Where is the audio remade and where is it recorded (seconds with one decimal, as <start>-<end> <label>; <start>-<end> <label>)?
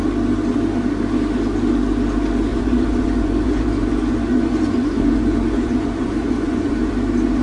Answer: 0.0-2.5 recorded; 2.5-6.9 remade; 6.9-7.4 recorded